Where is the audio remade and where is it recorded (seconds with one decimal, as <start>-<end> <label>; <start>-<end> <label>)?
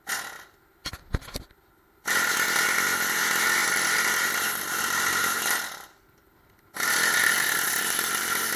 0.0-8.6 recorded